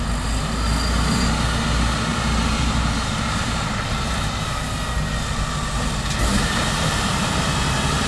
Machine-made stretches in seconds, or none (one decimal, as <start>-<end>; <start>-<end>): 2.1-4.2; 6.3-7.4

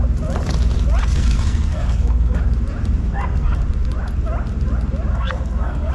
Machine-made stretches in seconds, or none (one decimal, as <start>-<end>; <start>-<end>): 1.0-2.4; 3.0-3.6; 5.1-5.9

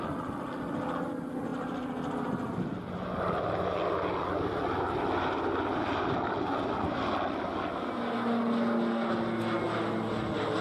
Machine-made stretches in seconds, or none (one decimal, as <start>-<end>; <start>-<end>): none